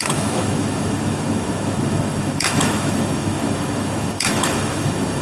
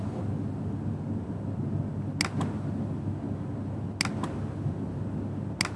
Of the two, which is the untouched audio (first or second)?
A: second